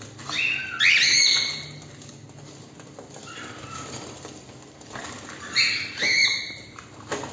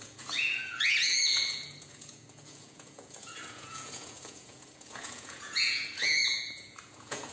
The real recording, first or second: first